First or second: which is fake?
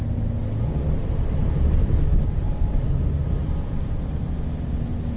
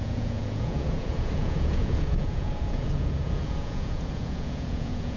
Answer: second